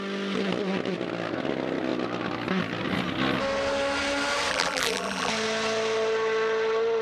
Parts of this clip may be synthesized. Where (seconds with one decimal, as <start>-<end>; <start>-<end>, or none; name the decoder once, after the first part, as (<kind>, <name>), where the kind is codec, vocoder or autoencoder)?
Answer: 4.5-5.3 (vocoder, BigVGAN v2)